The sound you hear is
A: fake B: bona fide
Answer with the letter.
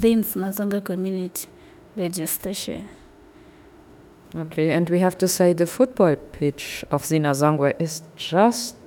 A